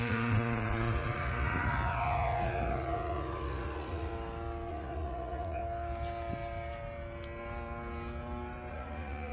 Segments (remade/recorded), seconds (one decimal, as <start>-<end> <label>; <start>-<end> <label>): 0.0-4.1 remade; 4.1-4.7 recorded; 4.7-5.6 remade; 5.6-8.7 recorded; 8.7-9.3 remade